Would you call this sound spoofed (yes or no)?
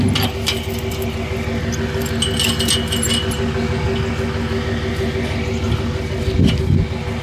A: no